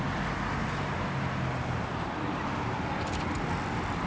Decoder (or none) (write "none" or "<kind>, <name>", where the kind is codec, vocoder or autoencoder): none